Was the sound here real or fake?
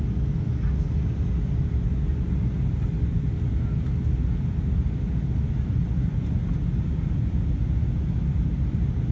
real